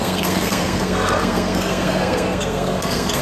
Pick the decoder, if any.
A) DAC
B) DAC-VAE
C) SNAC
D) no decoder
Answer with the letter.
C